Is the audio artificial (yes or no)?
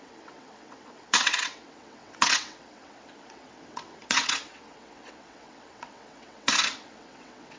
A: yes